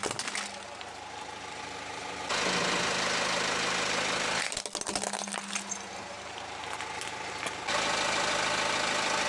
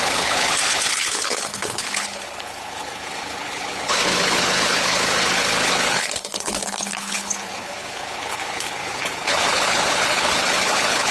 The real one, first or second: first